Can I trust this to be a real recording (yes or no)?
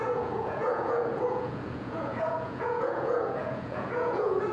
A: no